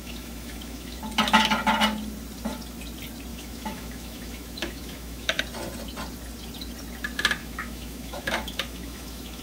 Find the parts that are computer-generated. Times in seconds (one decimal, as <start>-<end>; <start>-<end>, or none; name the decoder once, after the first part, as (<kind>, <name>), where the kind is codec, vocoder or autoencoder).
0.0-1.0 (autoencoder, DAC-VAE); 3.3-5.4; 7.4-9.4